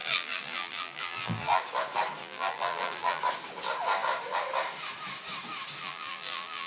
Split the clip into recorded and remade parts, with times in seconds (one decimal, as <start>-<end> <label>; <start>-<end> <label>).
0.0-1.6 remade; 1.6-2.2 recorded; 2.2-3.2 remade; 3.2-5.8 recorded; 5.8-6.7 remade